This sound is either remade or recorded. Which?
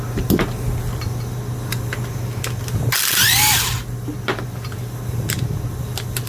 recorded